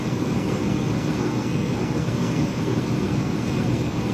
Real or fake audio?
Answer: fake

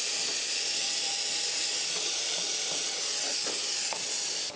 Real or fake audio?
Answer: real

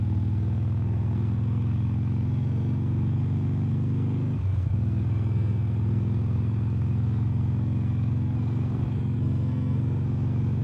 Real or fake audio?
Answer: fake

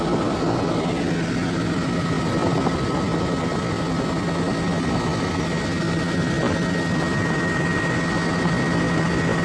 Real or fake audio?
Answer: real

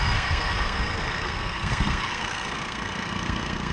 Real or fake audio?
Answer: fake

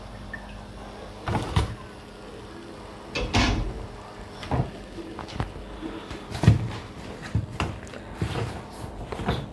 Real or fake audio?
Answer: real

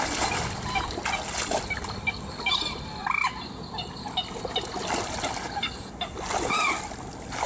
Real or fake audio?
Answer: real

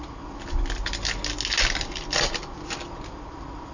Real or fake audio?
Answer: real